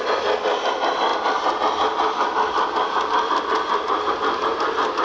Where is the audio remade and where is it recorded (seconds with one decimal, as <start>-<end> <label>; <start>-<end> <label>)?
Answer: 0.0-5.0 recorded